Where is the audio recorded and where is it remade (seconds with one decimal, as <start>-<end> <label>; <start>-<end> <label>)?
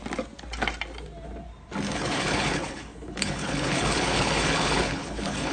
0.0-1.9 recorded; 1.9-5.5 remade